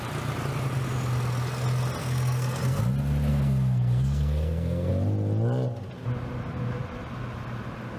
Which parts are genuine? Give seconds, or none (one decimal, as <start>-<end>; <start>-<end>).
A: 0.0-2.0; 2.8-3.3; 4.9-8.0